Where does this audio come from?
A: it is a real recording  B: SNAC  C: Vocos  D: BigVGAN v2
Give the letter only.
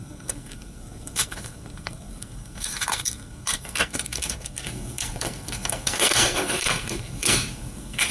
B